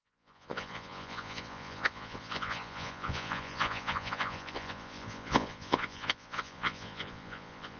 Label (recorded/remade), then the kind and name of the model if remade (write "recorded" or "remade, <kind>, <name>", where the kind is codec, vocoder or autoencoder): remade, vocoder, Vocos